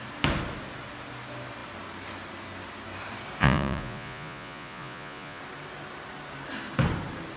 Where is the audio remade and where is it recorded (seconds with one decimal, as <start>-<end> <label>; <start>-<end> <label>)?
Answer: 0.0-3.4 recorded; 3.4-5.4 remade; 5.4-7.4 recorded